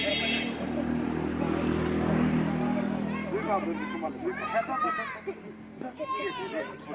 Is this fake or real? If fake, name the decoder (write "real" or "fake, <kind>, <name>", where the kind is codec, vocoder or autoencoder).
real